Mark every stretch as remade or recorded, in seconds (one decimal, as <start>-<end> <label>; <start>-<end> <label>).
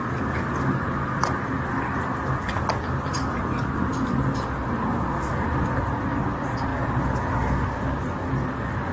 0.0-8.9 recorded